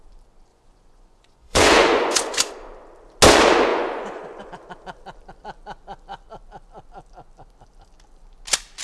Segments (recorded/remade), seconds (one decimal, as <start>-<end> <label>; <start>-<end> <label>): 0.0-0.5 recorded; 0.5-2.5 remade; 2.5-3.7 recorded; 3.7-4.5 remade; 4.5-8.8 recorded